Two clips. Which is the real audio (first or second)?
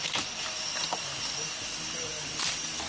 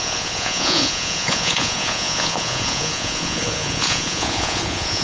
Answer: first